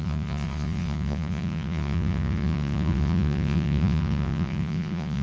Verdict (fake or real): fake